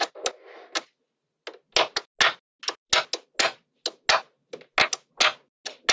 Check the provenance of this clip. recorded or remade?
recorded